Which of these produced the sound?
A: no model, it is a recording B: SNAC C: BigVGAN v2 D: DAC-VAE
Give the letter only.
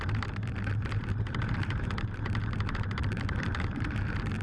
C